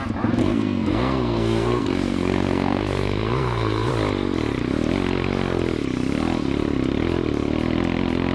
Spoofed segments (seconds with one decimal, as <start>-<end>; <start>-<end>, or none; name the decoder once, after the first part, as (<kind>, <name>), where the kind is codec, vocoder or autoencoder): 0.4-3.9 (codec, SNAC)

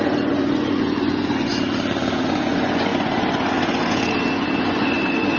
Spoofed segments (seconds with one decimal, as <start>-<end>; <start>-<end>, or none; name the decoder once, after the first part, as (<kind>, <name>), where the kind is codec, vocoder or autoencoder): 0.0-1.5 (vocoder, Vocos); 2.1-5.4

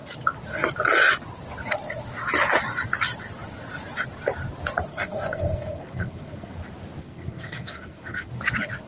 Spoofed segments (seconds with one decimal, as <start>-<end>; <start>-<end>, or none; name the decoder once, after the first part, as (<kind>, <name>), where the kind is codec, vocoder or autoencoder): 4.9-6.5 (codec, SNAC); 7.0-8.3

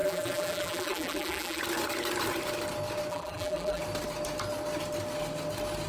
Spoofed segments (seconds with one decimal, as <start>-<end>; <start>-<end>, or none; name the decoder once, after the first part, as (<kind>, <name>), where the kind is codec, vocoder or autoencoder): 0.0-1.6 (vocoder, BigVGAN v2); 3.1-3.8

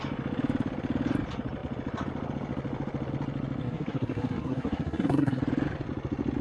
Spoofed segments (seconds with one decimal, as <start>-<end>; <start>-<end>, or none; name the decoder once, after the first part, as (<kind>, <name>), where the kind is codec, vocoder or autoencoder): 3.6-5.4 (codec, SNAC)

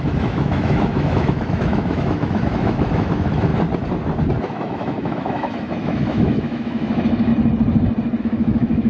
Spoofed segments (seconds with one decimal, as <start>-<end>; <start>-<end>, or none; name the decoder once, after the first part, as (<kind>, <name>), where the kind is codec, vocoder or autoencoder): 0.0-3.5 (autoencoder, DAC-VAE); 4.4-7.3; 8.2-8.9

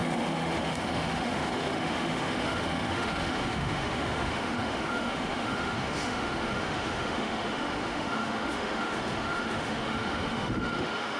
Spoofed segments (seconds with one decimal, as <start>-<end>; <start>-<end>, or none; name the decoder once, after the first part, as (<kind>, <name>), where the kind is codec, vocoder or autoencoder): 0.0-11.2 (autoencoder, DAC-VAE)

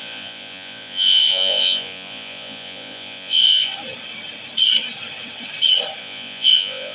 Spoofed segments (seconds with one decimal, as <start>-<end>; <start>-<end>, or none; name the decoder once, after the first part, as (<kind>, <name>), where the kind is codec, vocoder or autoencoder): 0.0-3.7 (vocoder, Vocos); 6.0-6.9